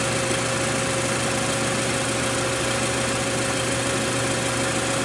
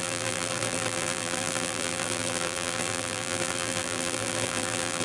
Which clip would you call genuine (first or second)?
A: first